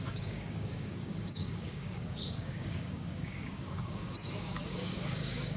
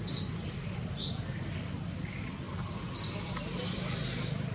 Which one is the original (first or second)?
second